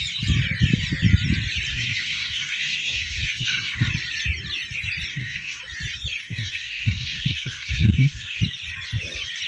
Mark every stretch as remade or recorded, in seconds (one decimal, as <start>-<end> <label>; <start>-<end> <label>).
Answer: 0.0-1.7 recorded; 1.7-3.9 remade; 3.9-5.1 recorded; 5.1-5.6 remade; 5.6-6.2 recorded; 6.2-8.4 remade; 8.4-9.5 recorded